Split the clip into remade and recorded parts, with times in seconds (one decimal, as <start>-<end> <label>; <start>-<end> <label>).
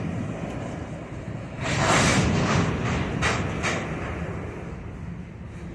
0.0-2.1 remade; 2.1-5.7 recorded